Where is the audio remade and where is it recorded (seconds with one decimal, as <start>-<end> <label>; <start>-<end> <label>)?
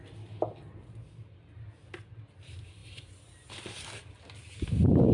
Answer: 0.0-5.1 recorded